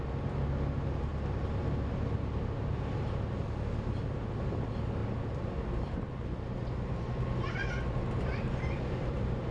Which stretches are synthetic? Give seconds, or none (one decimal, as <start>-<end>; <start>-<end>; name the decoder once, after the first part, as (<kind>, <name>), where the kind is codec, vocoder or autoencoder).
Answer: 5.0-9.5 (vocoder, BigVGAN v2)